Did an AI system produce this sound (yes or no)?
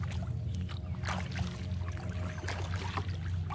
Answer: no